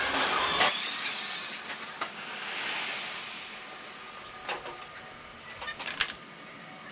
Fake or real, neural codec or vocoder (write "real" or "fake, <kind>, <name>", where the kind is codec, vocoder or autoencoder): real